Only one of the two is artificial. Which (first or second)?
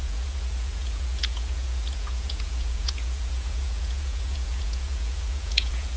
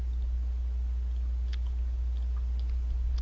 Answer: first